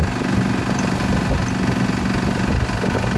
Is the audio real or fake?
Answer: real